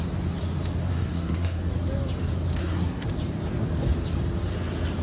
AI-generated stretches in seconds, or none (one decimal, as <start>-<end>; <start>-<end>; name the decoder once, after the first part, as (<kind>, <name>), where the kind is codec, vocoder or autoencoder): 0.9-1.7 (codec, SNAC); 2.6-3.1